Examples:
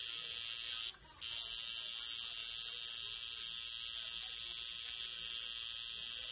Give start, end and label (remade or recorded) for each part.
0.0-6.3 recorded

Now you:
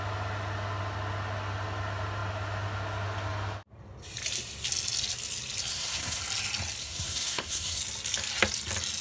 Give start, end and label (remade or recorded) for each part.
0.0-5.7 recorded; 5.7-6.2 remade; 6.2-6.8 recorded; 6.8-7.8 remade; 7.8-9.0 recorded

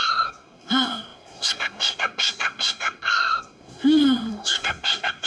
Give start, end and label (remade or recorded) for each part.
0.0-5.3 remade

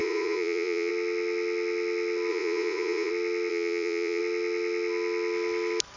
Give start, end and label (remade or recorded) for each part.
0.0-0.9 remade; 0.9-2.3 recorded; 2.3-3.1 remade; 3.1-3.5 recorded; 3.5-4.2 remade; 4.2-6.0 recorded

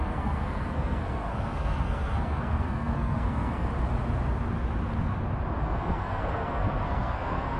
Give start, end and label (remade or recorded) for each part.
0.0-3.7 remade; 3.7-5.6 recorded; 5.6-7.6 remade

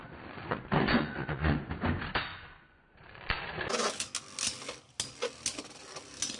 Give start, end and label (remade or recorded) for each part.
0.0-1.7 remade; 1.7-2.3 recorded; 2.3-3.4 remade; 3.4-6.4 recorded